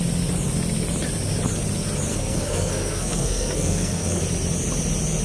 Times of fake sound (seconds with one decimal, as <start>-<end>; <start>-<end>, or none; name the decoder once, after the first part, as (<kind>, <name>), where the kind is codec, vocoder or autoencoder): 2.1-4.2 (codec, SNAC)